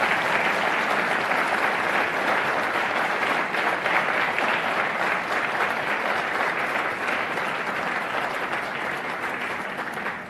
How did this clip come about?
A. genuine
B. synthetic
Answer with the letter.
A